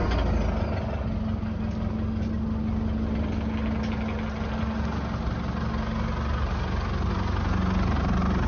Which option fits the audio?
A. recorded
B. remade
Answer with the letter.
A